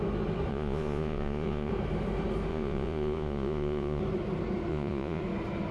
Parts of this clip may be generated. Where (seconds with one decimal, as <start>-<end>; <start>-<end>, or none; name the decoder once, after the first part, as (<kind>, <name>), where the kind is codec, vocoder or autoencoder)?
0.5-1.7 (vocoder, Vocos); 2.5-4.0; 4.7-5.2